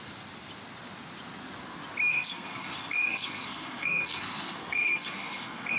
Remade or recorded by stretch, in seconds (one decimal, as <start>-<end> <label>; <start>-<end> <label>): 0.0-2.1 recorded; 2.1-5.8 remade